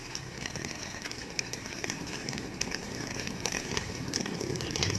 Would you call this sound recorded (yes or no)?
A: no